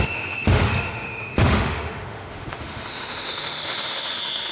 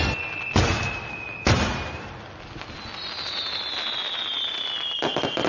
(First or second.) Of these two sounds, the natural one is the second